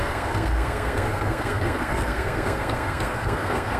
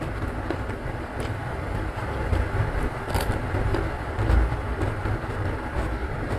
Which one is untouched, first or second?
second